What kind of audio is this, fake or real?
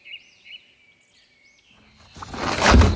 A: real